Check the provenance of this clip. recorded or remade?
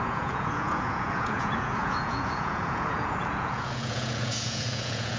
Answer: remade